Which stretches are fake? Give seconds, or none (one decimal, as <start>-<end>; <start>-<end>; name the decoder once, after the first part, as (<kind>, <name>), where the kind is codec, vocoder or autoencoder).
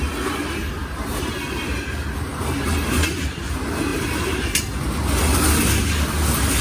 2.3-3.4 (vocoder, BigVGAN v2); 3.9-4.6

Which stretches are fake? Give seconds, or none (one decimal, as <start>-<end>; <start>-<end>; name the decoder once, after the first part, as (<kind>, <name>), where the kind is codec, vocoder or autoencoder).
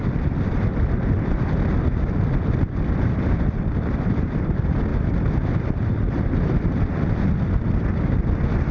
0.0-4.9 (vocoder, BigVGAN v2); 5.6-8.7